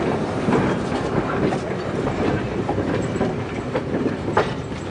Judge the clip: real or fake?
fake